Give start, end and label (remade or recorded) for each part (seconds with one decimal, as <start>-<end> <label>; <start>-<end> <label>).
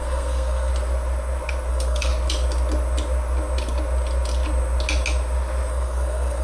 0.0-0.7 remade; 0.7-1.7 recorded; 1.7-2.1 remade; 2.1-5.7 recorded; 5.7-6.4 remade